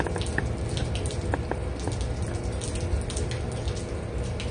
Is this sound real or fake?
real